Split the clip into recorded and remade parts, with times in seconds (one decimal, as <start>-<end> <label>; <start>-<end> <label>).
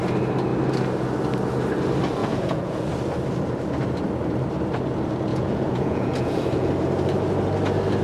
0.0-2.2 recorded; 2.2-2.9 remade; 2.9-5.3 recorded; 5.3-6.7 remade; 6.7-8.0 recorded